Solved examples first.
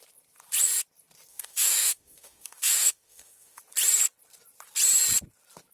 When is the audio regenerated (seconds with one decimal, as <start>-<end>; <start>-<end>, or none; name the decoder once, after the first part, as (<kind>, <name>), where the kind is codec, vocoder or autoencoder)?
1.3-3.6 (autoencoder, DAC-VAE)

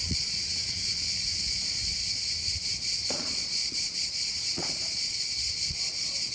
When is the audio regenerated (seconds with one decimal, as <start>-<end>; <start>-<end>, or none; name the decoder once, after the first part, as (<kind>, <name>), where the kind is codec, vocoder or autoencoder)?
0.0-6.3 (vocoder, Vocos)

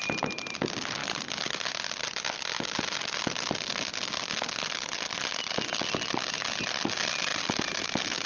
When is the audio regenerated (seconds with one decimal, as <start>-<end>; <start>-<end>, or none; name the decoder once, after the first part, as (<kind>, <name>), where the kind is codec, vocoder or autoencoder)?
none